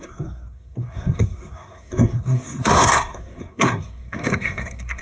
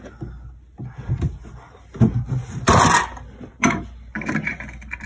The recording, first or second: second